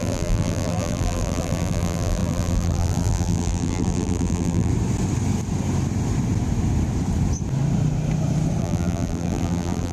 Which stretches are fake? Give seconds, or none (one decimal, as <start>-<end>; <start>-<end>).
0.0-4.7; 8.6-9.9